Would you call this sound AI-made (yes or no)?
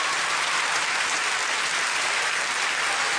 yes